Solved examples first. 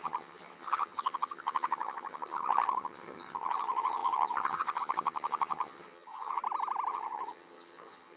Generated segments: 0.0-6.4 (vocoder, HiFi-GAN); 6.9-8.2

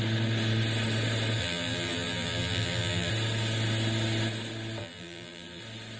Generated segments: 1.4-3.1 (vocoder, BigVGAN v2); 4.8-5.6